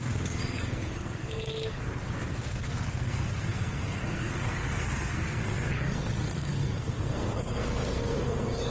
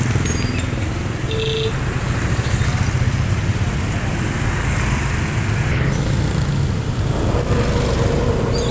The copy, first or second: first